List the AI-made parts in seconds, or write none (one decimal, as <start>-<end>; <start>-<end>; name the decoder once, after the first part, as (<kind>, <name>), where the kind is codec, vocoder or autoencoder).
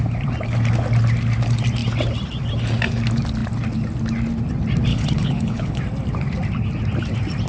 4.9-5.8 (codec, HILCodec)